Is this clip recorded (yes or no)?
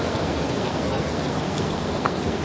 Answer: no